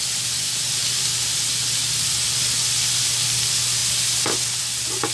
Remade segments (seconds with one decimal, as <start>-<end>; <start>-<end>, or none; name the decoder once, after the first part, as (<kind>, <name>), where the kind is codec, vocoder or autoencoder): none